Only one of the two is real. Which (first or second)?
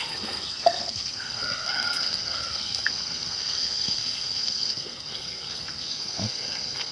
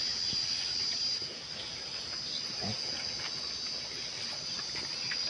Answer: second